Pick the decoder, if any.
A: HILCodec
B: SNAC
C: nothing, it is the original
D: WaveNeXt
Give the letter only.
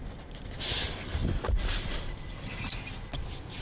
C